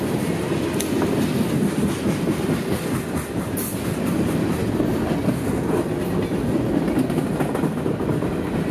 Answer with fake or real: real